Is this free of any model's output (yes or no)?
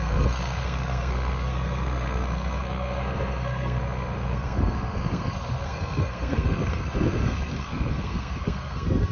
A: no